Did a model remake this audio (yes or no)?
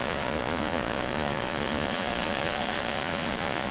yes